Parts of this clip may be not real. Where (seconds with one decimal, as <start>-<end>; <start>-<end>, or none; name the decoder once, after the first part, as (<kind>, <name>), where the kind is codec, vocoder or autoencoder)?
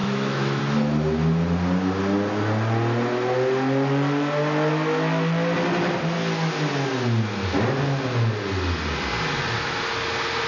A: 0.0-0.6 (autoencoder, DAC-VAE)